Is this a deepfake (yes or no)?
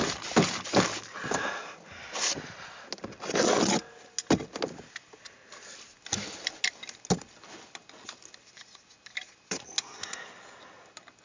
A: no